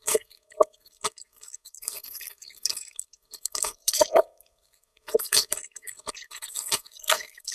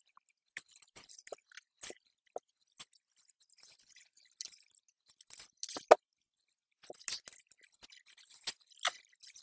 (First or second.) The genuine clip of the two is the second